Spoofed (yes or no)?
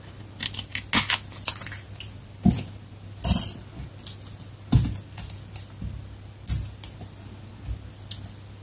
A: no